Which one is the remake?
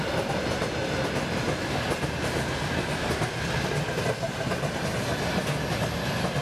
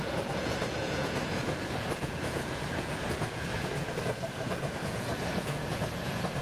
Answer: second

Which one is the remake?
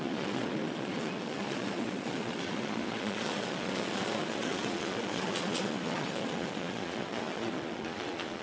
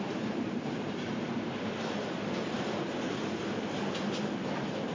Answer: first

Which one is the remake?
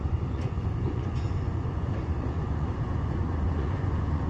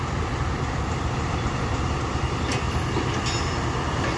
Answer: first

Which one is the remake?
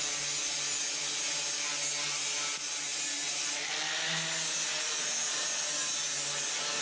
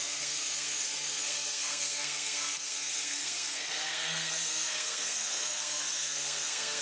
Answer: second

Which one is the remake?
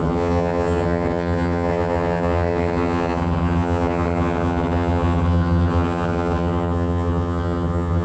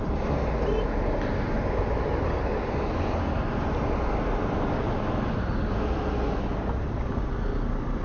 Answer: first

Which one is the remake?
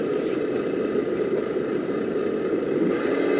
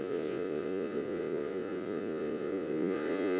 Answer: second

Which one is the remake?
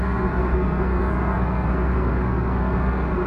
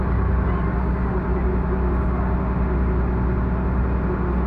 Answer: first